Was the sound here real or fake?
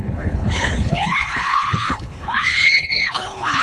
fake